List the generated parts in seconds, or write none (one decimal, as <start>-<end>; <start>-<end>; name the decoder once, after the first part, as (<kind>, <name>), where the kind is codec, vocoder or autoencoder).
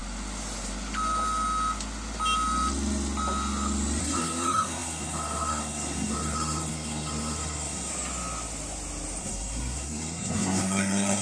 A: 4.0-7.9 (codec, SNAC); 9.2-11.2